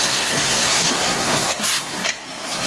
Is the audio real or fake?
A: fake